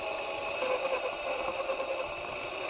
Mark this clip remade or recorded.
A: recorded